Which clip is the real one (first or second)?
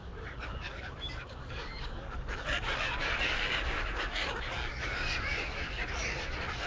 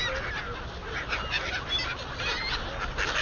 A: second